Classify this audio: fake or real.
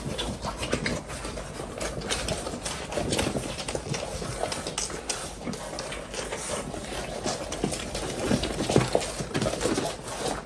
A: real